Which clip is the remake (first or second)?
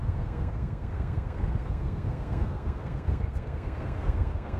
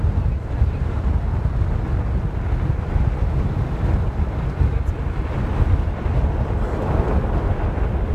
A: first